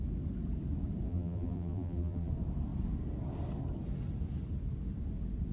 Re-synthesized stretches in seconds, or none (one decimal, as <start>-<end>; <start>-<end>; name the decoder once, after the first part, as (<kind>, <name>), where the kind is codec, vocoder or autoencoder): 1.1-2.3 (vocoder, BigVGAN v2)